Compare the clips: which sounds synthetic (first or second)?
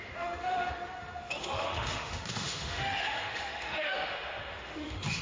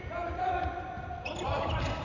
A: first